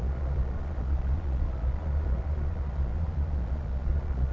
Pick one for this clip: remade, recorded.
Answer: remade